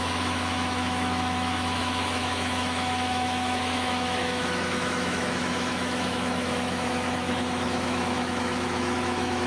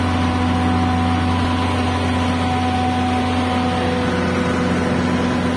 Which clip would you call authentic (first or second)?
second